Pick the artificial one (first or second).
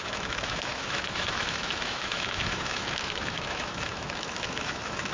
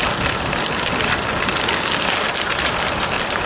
first